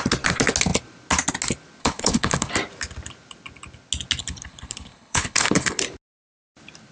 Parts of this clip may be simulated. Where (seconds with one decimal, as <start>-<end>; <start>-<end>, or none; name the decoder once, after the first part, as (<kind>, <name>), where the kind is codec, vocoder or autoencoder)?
1.8-2.5 (codec, HILCodec); 4.2-5.8